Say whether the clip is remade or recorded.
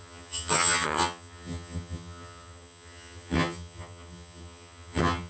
remade